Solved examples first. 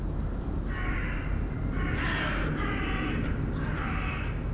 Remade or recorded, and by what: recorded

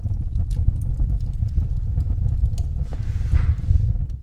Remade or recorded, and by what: recorded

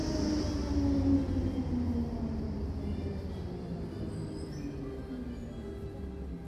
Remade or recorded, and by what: recorded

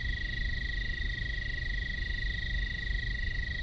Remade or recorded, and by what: recorded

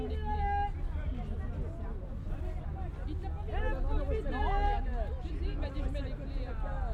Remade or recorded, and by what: recorded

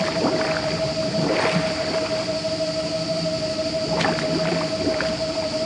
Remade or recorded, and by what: remade, vocoder, BigVGAN v2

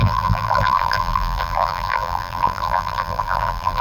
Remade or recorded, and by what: remade, vocoder, BigVGAN v2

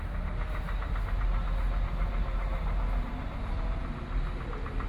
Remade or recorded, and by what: recorded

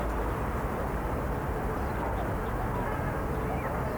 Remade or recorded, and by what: recorded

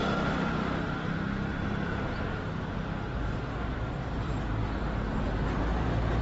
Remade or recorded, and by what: recorded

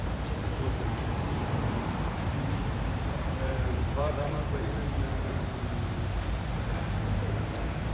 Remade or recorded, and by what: remade, vocoder, BigVGAN v2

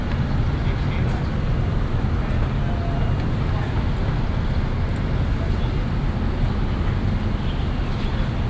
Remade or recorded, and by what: recorded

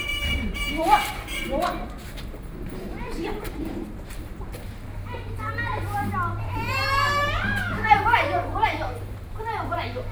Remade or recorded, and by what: remade, vocoder, BigVGAN v2